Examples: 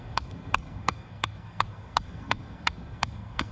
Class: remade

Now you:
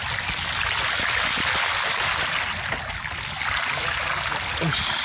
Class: recorded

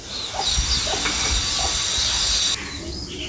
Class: recorded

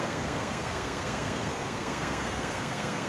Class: remade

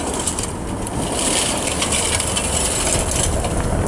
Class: recorded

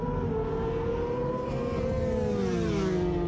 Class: recorded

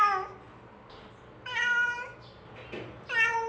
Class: recorded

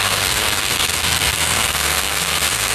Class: remade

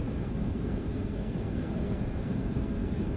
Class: remade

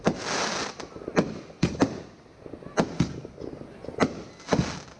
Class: recorded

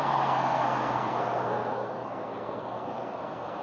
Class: remade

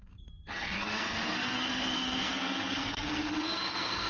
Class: remade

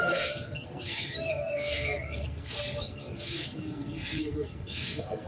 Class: remade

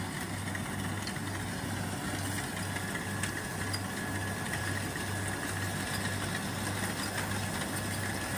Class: recorded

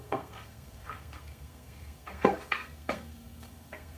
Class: remade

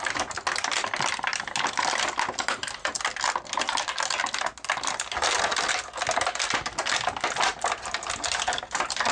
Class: recorded